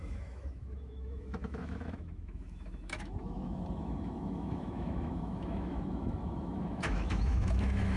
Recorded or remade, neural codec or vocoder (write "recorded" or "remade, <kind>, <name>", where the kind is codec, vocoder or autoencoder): remade, autoencoder, DAC-VAE